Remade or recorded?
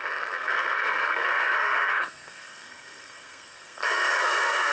remade